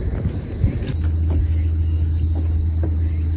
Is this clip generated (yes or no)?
no